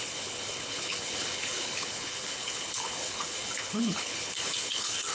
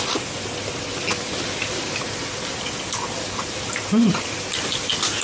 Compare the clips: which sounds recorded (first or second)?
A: second